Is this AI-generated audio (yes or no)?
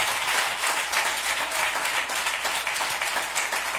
no